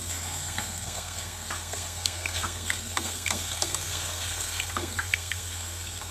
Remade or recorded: remade